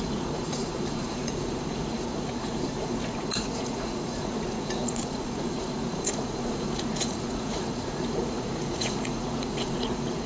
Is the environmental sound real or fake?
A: fake